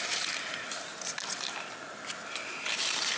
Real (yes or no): yes